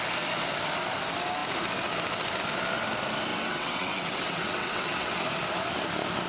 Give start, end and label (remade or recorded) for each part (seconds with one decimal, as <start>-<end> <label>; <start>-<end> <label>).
0.0-3.3 recorded; 3.3-5.1 remade; 5.1-6.3 recorded